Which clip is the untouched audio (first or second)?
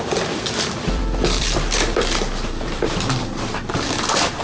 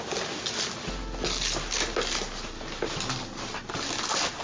second